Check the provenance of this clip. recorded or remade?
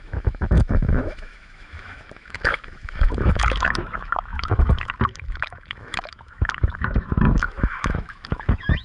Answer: remade